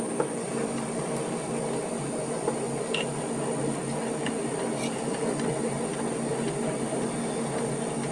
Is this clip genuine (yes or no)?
yes